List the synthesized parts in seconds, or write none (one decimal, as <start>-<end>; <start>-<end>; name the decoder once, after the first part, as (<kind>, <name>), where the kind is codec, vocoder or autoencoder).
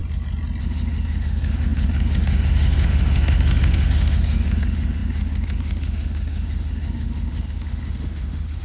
0.6-8.6 (autoencoder, DAC-VAE)